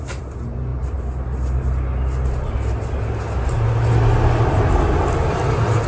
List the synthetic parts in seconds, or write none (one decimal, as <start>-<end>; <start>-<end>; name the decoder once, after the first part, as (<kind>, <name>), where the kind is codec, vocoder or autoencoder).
none